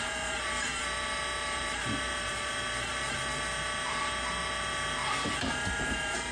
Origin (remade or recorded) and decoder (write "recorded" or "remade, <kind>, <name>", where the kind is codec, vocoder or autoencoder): remade, vocoder, BigVGAN v2